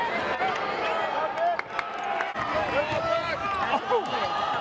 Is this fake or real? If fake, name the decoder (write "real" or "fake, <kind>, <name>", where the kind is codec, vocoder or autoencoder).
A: real